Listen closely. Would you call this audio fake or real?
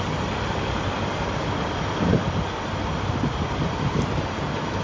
real